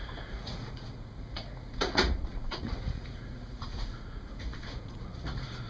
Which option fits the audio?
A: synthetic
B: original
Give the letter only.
A